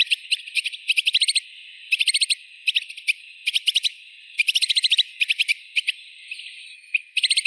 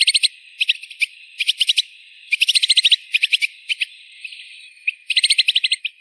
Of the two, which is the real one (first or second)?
first